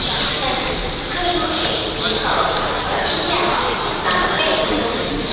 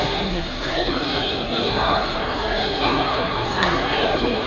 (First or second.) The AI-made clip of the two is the second